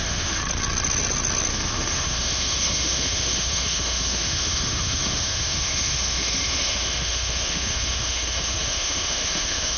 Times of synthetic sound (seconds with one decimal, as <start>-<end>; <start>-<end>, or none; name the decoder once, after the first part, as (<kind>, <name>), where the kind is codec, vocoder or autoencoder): 0.0-0.4 (autoencoder, DAC-VAE); 1.5-9.8